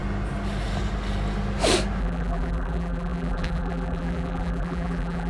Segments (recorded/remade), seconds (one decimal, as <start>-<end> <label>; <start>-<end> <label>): 0.0-2.0 recorded; 2.0-5.3 remade